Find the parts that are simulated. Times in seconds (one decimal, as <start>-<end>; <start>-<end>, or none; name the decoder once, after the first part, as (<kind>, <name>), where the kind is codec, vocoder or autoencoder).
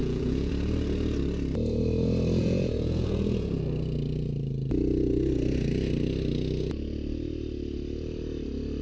0.0-0.5 (vocoder, Vocos); 2.4-3.6